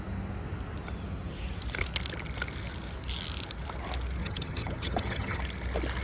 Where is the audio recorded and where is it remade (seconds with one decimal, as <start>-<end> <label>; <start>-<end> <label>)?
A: 0.0-4.2 recorded; 4.2-5.4 remade; 5.4-6.0 recorded